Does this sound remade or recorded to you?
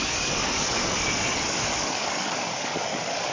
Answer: remade